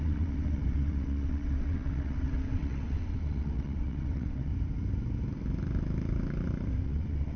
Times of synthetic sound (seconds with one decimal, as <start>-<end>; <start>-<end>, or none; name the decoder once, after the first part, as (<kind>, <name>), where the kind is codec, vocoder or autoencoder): 0.0-4.5 (vocoder, WaveNeXt); 6.8-7.4